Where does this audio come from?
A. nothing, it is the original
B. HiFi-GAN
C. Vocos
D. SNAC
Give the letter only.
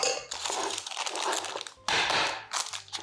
A